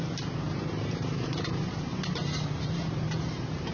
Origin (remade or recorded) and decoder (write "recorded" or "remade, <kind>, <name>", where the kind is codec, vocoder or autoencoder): remade, vocoder, BigVGAN v2